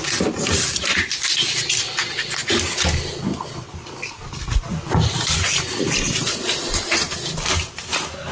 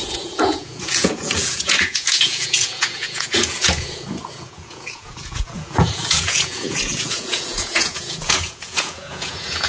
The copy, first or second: second